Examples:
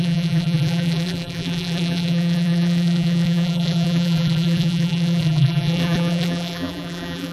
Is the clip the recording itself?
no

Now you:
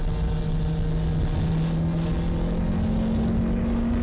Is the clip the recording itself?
yes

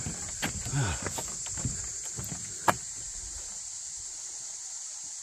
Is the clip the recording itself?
yes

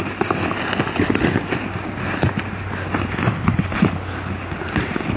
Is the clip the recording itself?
yes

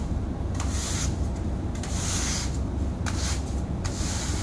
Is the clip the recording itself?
yes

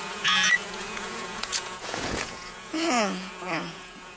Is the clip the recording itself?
no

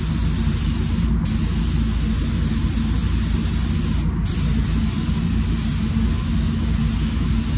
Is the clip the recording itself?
yes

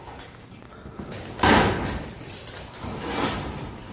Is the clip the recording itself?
yes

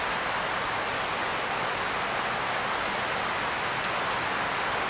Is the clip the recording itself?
yes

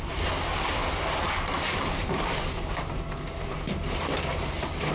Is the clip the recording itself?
yes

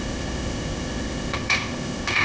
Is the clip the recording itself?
no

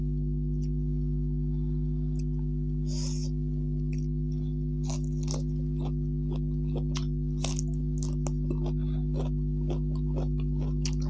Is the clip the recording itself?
yes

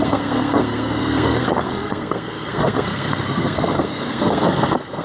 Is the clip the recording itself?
no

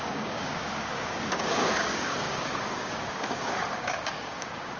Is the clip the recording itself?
no